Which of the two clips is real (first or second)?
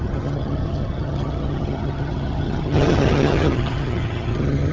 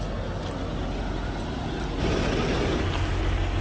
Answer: second